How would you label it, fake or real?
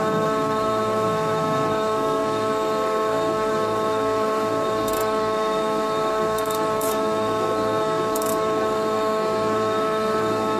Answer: fake